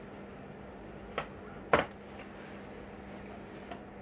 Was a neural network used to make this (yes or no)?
no